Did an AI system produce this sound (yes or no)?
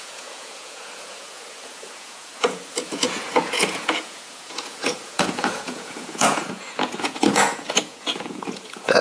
yes